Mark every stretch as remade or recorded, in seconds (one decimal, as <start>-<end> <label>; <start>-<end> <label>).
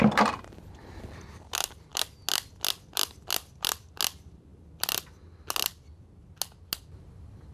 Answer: 0.0-7.5 recorded